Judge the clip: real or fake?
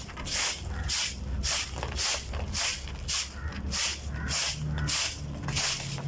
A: real